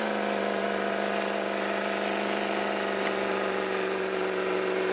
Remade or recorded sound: recorded